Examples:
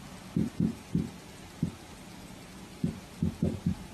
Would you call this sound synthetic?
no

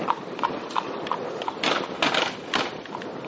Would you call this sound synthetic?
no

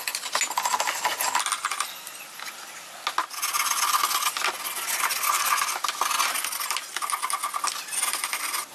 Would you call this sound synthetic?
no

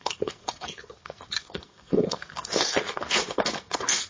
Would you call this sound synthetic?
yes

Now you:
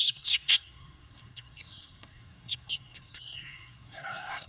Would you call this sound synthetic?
yes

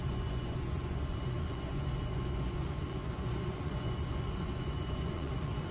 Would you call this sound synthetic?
yes